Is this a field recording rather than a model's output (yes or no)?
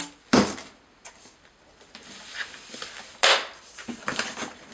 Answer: yes